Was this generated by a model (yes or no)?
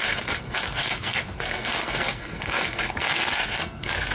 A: yes